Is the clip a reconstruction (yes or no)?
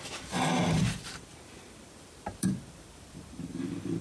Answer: yes